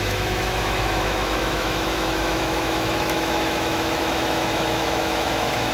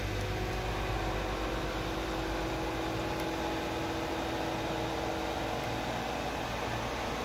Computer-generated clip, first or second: first